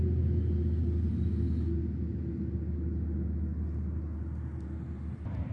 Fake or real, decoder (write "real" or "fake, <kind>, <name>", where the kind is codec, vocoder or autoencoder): real